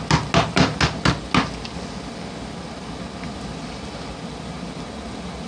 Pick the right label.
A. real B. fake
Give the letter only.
A